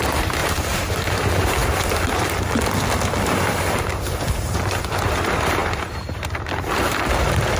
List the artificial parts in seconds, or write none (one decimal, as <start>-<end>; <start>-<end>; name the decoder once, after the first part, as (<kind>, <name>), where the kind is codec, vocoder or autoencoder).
0.0-1.6 (vocoder, BigVGAN v2); 3.5-7.6